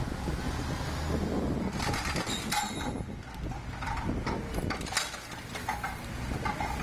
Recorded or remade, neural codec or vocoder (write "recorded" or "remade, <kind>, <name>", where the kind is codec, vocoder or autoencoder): recorded